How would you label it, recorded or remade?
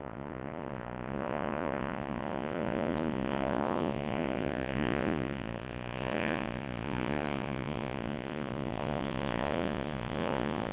remade